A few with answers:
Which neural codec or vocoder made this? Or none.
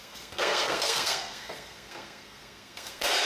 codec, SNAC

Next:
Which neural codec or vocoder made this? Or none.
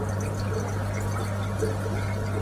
none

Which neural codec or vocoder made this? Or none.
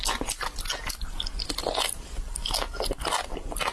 none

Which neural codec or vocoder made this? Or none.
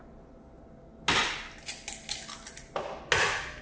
none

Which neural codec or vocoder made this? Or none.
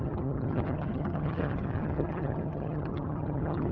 vocoder, HiFi-GAN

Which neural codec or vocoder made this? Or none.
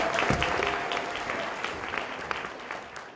none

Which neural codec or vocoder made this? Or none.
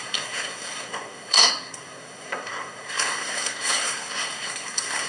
codec, SNAC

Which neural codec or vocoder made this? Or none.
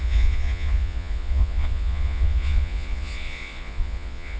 vocoder, Vocos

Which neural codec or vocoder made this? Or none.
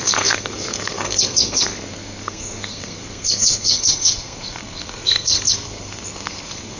codec, SNAC